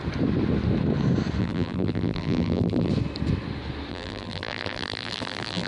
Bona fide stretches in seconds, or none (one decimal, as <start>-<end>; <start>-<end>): 0.0-1.4; 2.9-3.9